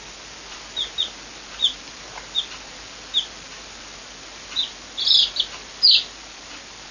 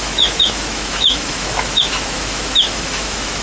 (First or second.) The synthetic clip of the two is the second